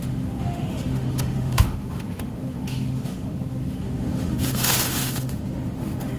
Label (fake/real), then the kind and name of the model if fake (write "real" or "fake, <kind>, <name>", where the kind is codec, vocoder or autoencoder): fake, autoencoder, DAC-VAE